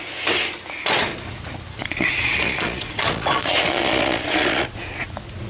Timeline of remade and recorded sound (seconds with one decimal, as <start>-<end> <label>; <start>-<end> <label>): 0.0-1.8 recorded; 1.8-5.1 remade; 5.1-5.5 recorded